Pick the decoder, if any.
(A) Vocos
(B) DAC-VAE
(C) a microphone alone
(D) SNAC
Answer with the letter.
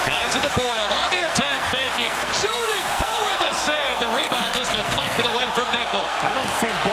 D